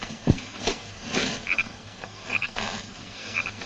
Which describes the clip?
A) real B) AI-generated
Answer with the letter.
B